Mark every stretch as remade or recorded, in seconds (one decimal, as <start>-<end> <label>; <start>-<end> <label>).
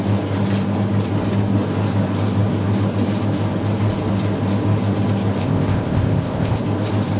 0.0-5.4 recorded; 5.4-6.6 remade; 6.6-7.2 recorded